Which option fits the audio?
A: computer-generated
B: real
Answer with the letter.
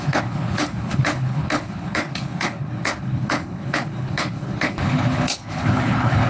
A